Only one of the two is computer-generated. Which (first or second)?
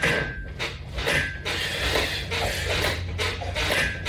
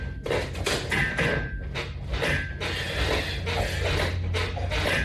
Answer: first